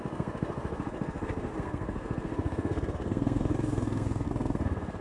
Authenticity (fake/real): fake